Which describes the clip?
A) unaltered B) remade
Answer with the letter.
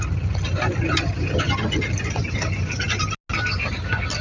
A